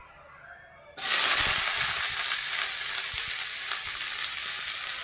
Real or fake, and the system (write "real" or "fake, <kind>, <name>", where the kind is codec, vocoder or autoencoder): real